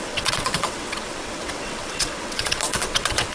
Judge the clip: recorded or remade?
remade